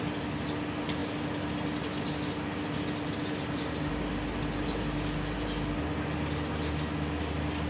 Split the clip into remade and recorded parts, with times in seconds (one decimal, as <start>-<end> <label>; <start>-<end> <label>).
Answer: 0.0-7.7 recorded